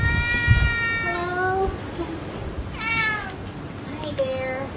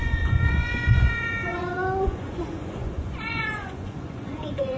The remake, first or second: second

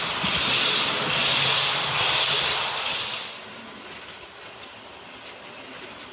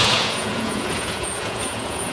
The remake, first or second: second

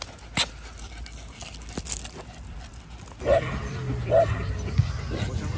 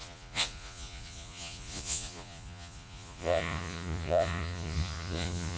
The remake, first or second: second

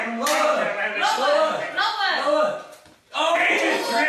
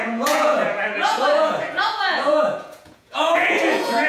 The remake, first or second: second